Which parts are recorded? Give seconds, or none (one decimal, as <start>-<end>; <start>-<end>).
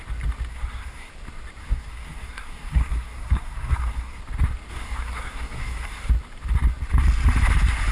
0.0-0.5; 1.1-1.6; 4.2-4.7; 6.1-7.9